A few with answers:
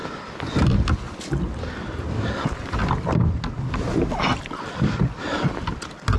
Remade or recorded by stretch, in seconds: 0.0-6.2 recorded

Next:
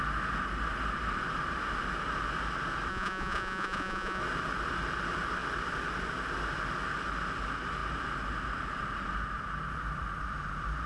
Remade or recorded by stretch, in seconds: 0.0-2.9 recorded; 2.9-4.2 remade; 4.2-10.9 recorded

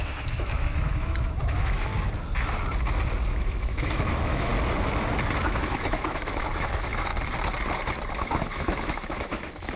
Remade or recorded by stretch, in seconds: 0.0-1.9 remade; 1.9-3.3 recorded; 3.3-4.5 remade; 4.5-5.4 recorded; 5.4-7.1 remade; 7.1-8.2 recorded; 8.2-9.8 remade

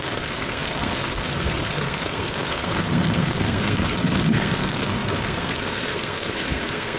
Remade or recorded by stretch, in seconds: 0.0-7.0 remade

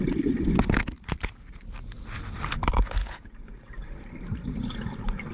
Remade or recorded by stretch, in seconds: 0.0-3.0 recorded; 3.0-3.7 remade; 3.7-5.3 recorded

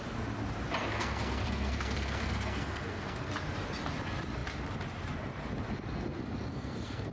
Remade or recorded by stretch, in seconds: 0.0-0.8 recorded; 0.8-3.3 remade; 3.3-6.5 recorded; 6.5-7.1 remade

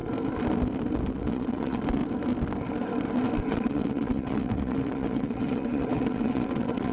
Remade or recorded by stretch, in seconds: 0.0-1.1 recorded; 1.1-2.0 remade; 2.0-3.5 recorded; 3.5-6.9 remade